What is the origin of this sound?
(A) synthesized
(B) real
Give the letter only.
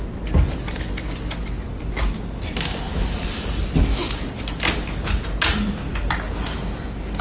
B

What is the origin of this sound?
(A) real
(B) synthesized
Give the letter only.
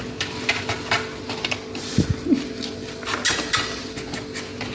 A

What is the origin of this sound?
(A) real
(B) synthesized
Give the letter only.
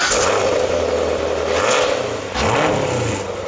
A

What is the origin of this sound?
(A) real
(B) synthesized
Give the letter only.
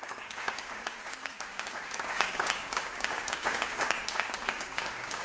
B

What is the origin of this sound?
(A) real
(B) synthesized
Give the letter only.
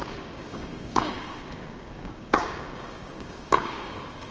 B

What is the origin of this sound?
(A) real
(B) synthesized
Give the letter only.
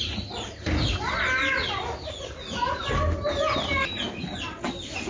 A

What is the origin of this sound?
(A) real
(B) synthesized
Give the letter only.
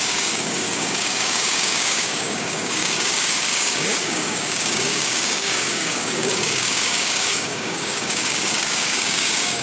B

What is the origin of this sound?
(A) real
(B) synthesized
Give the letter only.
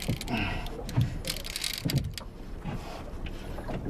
A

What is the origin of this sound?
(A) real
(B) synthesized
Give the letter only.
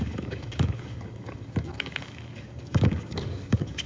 B